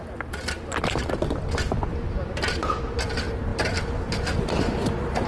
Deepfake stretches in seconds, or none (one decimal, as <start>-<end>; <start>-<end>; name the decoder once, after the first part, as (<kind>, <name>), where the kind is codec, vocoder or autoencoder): 0.0-1.1 (vocoder, BigVGAN v2)

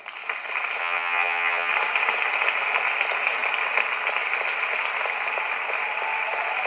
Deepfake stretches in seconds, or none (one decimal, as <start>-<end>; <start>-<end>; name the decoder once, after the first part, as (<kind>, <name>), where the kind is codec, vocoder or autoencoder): 0.8-1.7 (vocoder, HiFi-GAN)

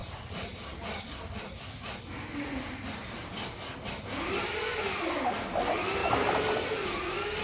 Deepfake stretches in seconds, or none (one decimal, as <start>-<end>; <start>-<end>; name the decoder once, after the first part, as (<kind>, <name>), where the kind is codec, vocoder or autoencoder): 0.0-3.9 (vocoder, BigVGAN v2); 6.0-6.6

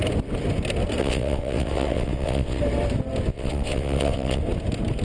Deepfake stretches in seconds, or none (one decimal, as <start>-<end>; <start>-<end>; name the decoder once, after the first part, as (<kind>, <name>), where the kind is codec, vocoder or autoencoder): 1.0-2.6 (vocoder, WaveNeXt); 3.3-4.4

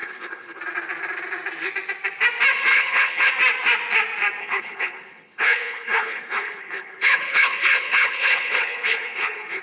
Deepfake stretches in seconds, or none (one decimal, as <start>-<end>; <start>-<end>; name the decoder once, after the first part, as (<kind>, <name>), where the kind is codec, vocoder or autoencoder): 0.0-0.6 (codec, HILCodec); 2.7-3.3; 4.4-9.6

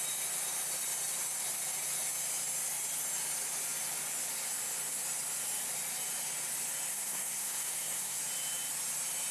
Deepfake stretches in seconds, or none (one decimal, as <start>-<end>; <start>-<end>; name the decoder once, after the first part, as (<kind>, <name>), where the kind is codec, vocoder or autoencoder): 6.9-8.2 (codec, SNAC)